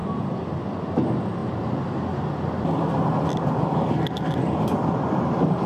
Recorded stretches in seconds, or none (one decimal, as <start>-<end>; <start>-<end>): 0.0-5.7